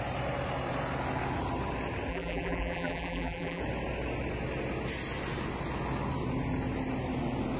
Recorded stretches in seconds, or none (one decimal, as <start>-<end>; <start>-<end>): 0.0-2.1; 3.6-7.6

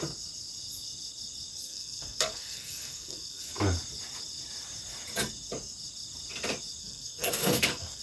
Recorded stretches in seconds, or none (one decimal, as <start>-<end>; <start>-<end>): 0.0-1.5; 3.5-6.8

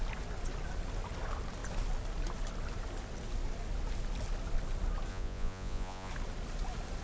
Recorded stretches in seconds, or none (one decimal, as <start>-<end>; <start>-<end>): 0.0-5.1; 6.1-7.0

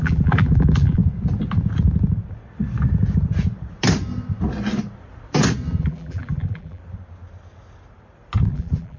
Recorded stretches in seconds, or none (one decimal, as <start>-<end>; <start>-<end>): 1.0-5.8; 6.8-8.5

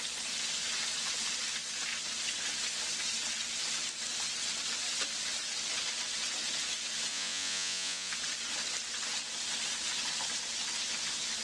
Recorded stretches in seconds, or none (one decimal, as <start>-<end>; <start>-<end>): 0.0-7.1; 8.1-11.4

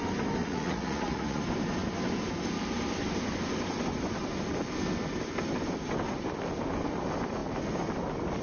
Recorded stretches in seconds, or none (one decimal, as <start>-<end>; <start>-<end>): 0.0-0.4; 1.4-8.4

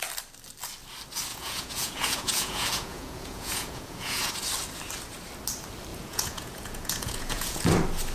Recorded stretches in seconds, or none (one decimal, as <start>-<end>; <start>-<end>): 0.0-1.3; 4.3-5.9; 7.6-8.1